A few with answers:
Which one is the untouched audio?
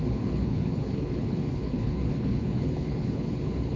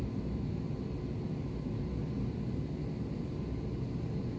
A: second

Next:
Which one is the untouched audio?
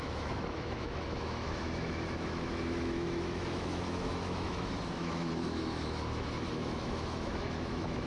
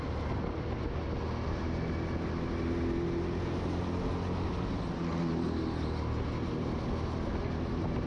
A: second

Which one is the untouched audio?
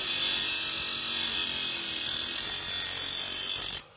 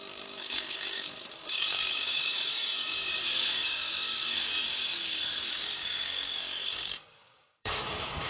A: first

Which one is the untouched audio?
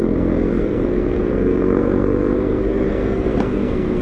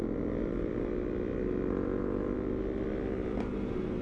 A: second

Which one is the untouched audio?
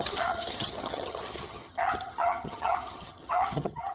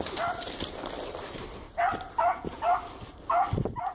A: second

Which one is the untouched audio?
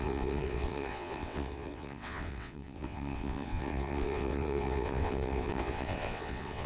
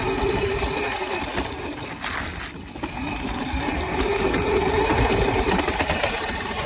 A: second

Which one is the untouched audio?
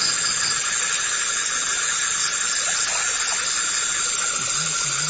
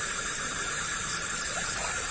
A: first